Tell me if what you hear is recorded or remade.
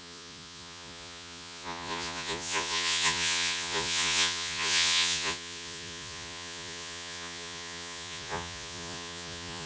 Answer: remade